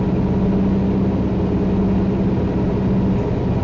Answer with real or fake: real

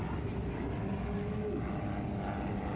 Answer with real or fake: real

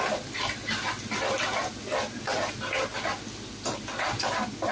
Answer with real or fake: real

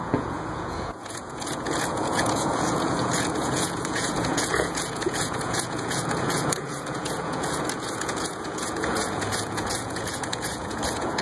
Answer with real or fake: fake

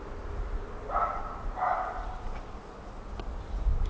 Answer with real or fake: real